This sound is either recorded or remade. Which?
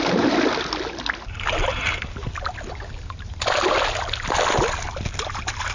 recorded